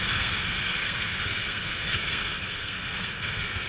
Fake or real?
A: fake